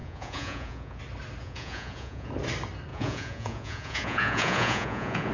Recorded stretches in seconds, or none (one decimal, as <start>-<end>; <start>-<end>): 1.0-1.4; 2.3-2.9